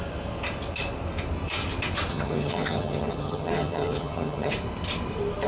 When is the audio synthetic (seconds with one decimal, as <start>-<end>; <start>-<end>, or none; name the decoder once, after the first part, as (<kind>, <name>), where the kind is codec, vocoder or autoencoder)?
2.1-4.5 (vocoder, HiFi-GAN)